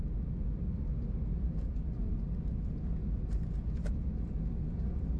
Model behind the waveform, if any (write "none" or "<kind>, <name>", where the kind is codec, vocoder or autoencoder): none